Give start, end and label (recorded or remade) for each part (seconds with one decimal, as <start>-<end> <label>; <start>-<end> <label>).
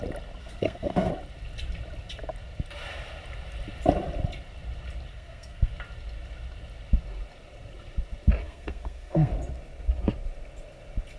0.0-0.4 recorded; 0.4-1.1 remade; 1.1-5.1 recorded; 5.1-5.7 remade; 5.7-8.4 recorded; 8.4-9.3 remade; 9.3-11.2 recorded